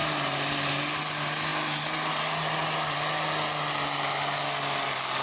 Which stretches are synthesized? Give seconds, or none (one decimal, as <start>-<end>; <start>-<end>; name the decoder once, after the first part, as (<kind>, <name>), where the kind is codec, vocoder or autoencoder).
none